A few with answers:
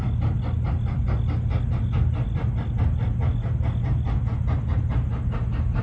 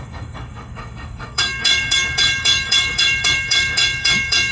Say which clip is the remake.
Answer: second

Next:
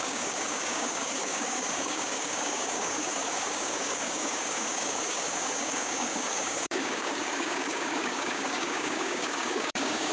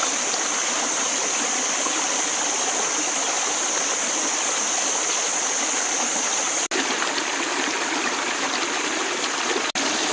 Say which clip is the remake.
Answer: first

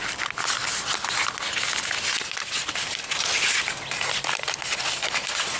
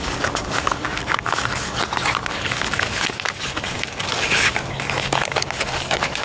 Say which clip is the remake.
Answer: second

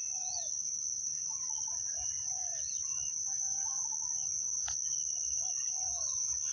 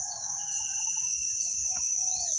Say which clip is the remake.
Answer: second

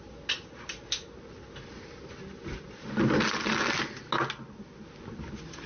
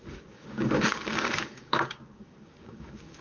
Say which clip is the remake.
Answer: second